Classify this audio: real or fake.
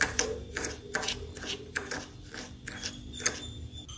real